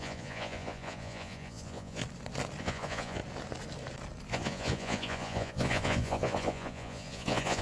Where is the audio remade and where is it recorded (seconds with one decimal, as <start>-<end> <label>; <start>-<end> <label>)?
0.0-2.0 remade; 2.0-2.6 recorded; 2.6-3.2 remade; 3.2-4.3 recorded; 4.3-7.6 remade